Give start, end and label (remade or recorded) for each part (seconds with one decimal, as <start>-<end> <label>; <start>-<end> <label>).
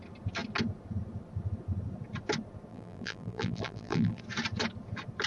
0.0-2.7 recorded; 2.7-4.2 remade; 4.2-5.3 recorded